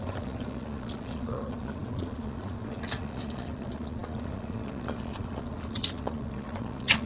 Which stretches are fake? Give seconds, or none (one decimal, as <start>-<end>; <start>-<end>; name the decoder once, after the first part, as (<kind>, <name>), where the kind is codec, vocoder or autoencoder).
0.0-7.1 (vocoder, Vocos)

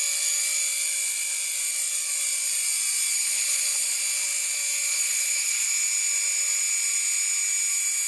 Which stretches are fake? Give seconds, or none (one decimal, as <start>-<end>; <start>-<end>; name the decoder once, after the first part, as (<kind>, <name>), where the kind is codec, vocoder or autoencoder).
3.1-4.0 (codec, HILCodec); 4.9-5.7

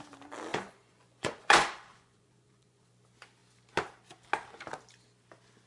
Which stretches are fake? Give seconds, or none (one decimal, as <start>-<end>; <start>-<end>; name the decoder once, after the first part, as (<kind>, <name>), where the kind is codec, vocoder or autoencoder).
0.5-2.9 (vocoder, Vocos)

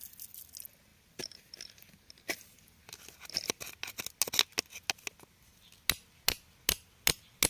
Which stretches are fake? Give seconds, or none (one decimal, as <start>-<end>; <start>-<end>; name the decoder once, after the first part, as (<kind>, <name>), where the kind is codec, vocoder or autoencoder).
0.9-2.8 (vocoder, BigVGAN v2)